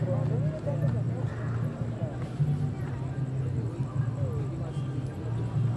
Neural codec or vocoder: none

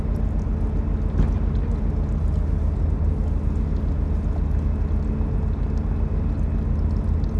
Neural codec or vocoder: none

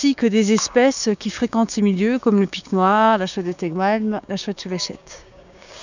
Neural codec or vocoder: codec, DAC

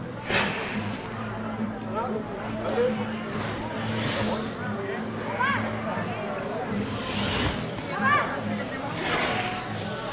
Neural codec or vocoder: none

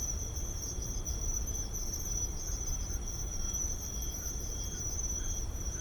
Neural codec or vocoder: vocoder, BigVGAN v2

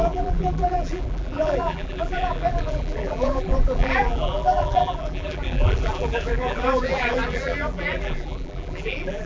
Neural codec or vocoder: vocoder, BigVGAN v2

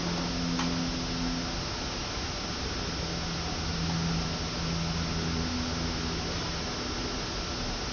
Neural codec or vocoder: none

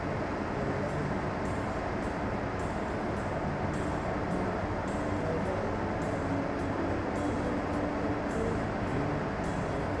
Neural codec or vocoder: none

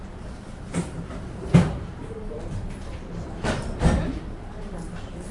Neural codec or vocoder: vocoder, BigVGAN v2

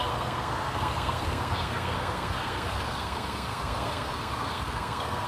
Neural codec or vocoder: codec, SNAC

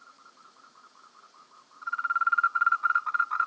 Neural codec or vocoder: vocoder, Vocos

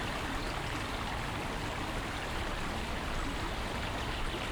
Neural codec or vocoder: none